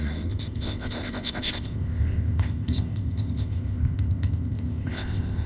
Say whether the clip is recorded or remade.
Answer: remade